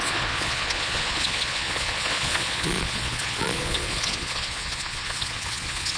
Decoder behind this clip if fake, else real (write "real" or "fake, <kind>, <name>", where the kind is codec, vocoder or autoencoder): fake, vocoder, Vocos